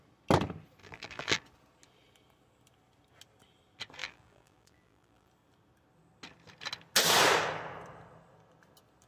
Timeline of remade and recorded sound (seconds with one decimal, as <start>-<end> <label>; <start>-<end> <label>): 0.0-0.8 recorded; 0.8-1.4 remade; 1.4-4.0 recorded; 4.0-5.3 remade; 5.3-9.1 recorded